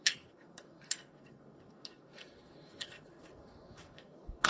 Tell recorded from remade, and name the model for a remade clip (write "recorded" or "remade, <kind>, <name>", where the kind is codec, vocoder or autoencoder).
remade, codec, SNAC